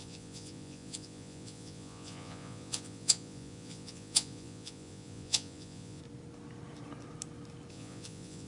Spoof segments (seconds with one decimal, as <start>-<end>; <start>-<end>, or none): 0.0-6.0; 7.7-8.5